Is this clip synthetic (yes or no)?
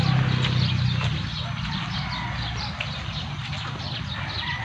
no